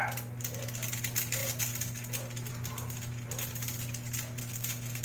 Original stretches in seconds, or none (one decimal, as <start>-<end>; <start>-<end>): 0.0-4.4